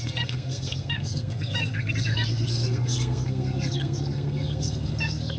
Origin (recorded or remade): remade